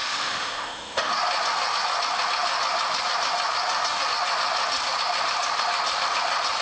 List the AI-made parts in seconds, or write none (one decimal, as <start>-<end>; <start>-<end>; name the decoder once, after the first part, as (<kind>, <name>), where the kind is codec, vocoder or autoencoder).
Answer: 0.0-1.1 (autoencoder, DAC-VAE)